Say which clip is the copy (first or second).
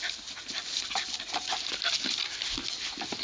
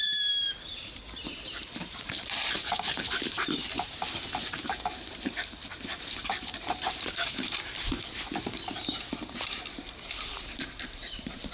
second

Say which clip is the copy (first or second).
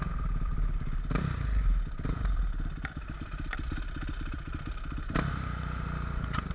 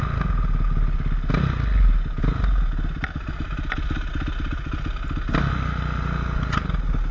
first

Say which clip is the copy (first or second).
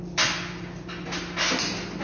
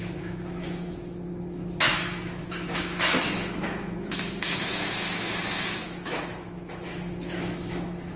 second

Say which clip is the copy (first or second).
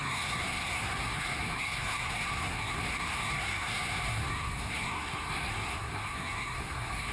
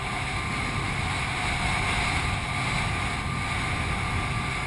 first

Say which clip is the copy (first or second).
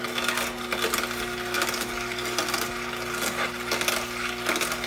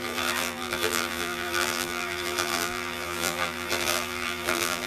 second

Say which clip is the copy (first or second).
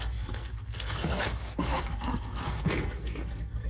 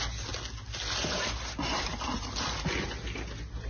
first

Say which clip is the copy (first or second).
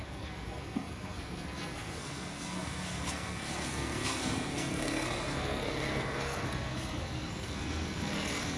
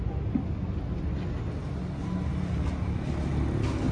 first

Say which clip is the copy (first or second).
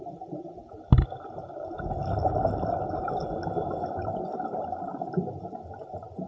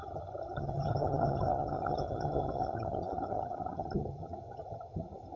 second